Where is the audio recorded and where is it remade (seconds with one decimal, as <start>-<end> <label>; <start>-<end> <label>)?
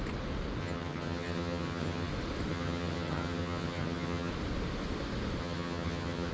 0.0-0.6 recorded; 0.6-2.1 remade; 2.1-2.5 recorded; 2.5-4.3 remade; 4.3-5.4 recorded; 5.4-6.3 remade